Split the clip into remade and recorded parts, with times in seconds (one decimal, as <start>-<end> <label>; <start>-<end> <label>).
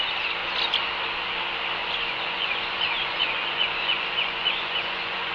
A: 0.0-1.8 recorded; 1.8-5.3 remade